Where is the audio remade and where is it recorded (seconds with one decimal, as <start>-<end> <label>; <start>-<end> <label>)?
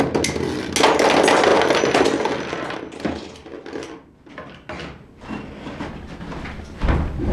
0.0-7.3 recorded